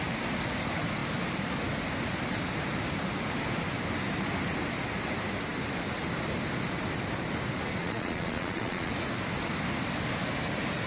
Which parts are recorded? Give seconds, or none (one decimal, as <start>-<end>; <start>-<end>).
0.0-7.8; 8.9-10.9